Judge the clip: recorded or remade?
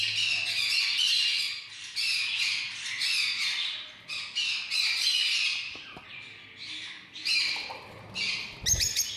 recorded